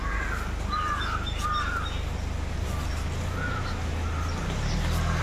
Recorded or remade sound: recorded